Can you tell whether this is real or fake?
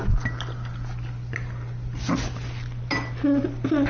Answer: real